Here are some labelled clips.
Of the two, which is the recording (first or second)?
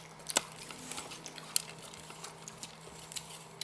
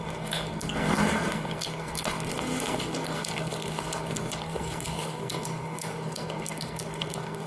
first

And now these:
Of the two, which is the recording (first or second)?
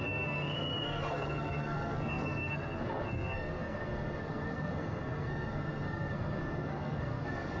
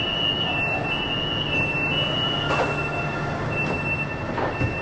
second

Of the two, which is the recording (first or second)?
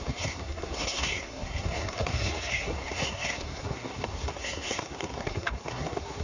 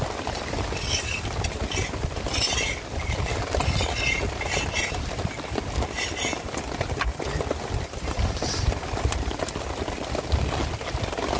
second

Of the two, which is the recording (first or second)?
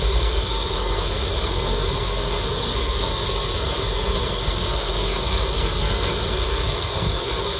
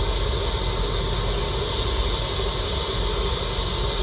second